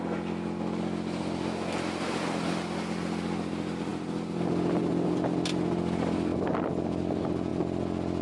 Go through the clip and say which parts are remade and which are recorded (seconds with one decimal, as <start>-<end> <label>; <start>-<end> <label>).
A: 0.0-8.2 recorded